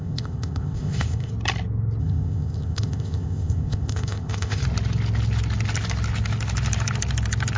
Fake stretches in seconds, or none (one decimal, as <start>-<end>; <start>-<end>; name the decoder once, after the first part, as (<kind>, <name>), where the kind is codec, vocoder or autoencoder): 0.0-1.3 (codec, ZipCodec); 2.0-4.6